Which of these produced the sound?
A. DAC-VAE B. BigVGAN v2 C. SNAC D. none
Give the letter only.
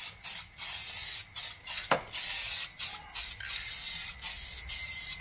D